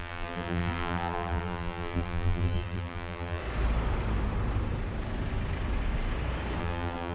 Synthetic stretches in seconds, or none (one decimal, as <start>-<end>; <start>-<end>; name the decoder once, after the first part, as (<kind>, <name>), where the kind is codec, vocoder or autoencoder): 0.0-3.4 (vocoder, BigVGAN v2); 6.6-7.1